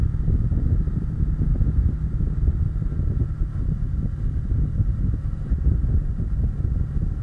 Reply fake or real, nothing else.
real